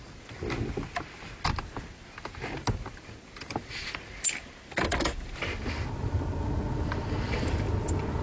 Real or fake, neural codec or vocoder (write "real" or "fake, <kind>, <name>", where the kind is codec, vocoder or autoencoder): real